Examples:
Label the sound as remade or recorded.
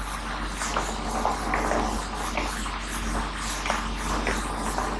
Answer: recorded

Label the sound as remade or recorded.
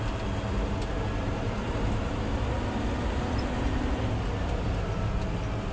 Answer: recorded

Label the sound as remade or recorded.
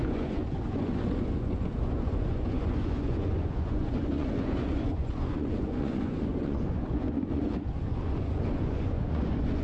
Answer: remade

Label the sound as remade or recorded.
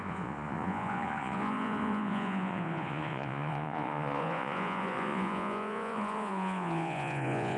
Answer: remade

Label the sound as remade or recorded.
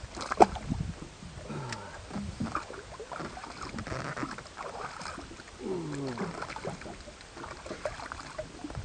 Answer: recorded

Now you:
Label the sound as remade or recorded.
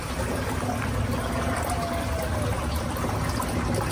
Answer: recorded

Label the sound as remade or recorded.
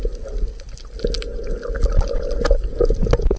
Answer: recorded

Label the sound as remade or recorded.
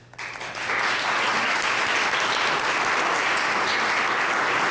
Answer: recorded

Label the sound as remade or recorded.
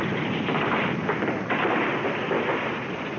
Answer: recorded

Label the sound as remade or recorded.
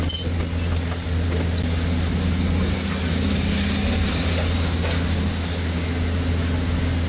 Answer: recorded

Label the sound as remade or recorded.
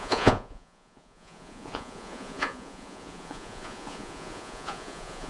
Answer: remade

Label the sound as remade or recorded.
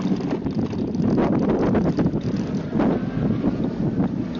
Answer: recorded